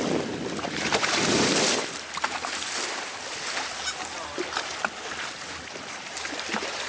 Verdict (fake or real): fake